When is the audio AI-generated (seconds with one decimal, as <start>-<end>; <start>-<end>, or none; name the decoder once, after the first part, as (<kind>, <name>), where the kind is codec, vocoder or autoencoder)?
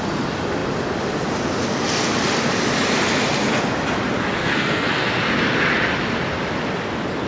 4.4-5.1 (codec, SNAC)